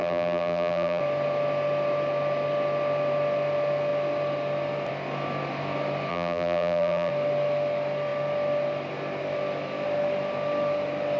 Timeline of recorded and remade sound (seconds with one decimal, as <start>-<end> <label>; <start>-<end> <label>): 0.0-1.0 remade; 1.0-6.1 recorded; 6.1-7.1 remade; 7.1-11.2 recorded